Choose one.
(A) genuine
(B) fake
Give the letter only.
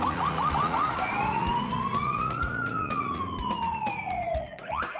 B